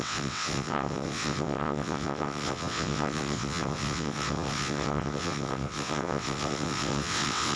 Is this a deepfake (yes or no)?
yes